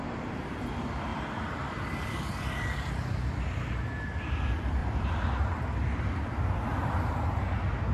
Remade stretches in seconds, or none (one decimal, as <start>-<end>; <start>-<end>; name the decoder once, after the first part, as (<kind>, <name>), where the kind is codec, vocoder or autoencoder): 1.1-2.9 (vocoder, BigVGAN v2); 4.8-7.2